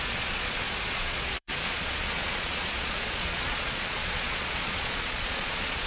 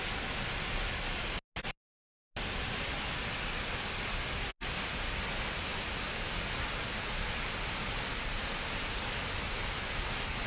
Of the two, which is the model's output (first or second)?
first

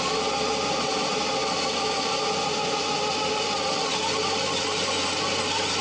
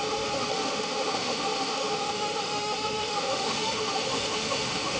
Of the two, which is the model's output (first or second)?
second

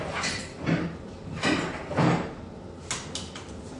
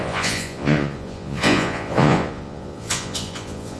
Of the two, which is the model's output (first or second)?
second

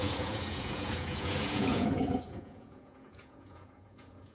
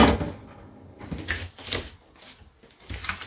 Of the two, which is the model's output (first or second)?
first